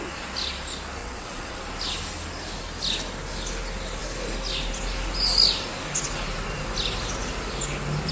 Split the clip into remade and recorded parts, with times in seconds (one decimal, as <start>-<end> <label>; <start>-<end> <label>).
0.0-1.0 recorded; 1.0-1.6 remade; 1.6-8.1 recorded